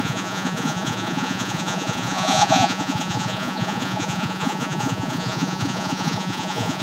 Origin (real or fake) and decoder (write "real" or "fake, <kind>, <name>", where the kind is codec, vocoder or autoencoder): fake, vocoder, Vocos